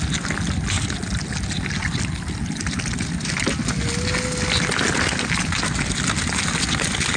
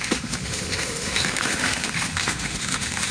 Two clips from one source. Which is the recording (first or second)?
first